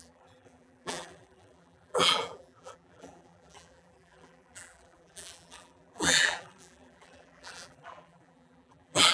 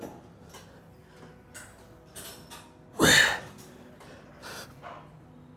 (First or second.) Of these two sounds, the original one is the second